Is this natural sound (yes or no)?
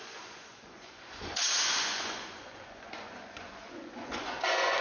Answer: no